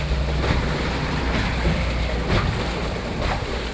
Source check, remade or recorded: recorded